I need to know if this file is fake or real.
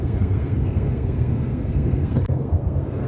fake